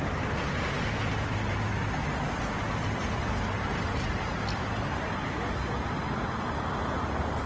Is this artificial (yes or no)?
no